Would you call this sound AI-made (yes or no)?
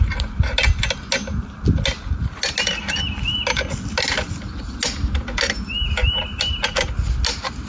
no